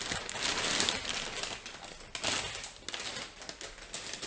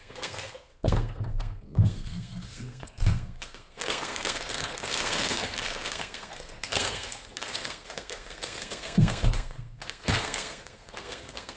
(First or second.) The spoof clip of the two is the second